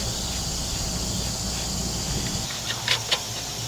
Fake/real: real